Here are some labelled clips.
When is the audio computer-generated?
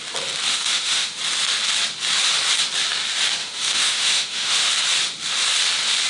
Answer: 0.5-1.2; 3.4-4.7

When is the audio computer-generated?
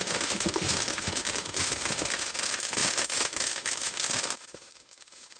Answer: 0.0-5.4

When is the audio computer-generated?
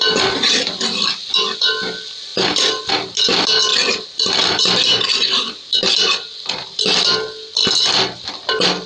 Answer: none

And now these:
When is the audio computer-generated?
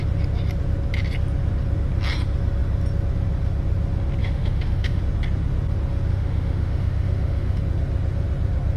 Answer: 4.2-5.0; 6.1-7.6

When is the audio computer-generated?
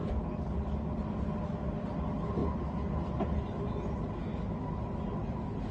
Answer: 4.3-4.8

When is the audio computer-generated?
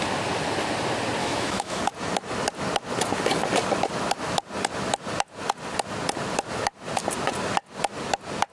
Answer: 1.2-1.8